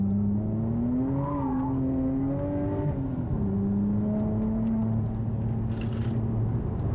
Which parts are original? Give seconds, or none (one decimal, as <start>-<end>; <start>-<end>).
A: 0.0-6.9